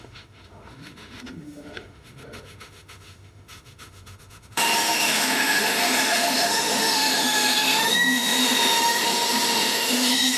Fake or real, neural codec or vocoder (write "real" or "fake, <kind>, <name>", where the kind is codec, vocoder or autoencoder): fake, autoencoder, DAC-VAE